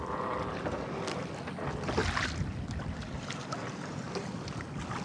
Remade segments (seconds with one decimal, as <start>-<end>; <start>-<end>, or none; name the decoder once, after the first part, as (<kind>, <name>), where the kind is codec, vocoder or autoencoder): none